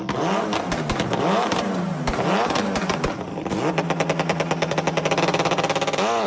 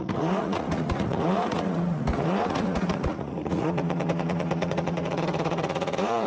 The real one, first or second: first